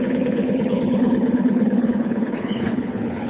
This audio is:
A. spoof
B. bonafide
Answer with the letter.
A